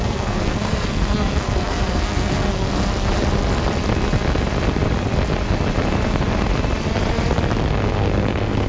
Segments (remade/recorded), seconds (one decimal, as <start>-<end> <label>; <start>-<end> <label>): 0.0-2.9 remade; 2.9-7.7 recorded; 7.7-8.7 remade